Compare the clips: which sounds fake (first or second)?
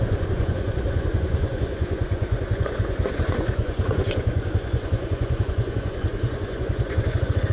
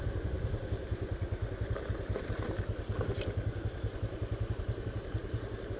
first